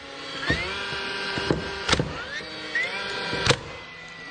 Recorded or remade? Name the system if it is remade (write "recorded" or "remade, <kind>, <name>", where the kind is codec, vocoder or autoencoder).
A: recorded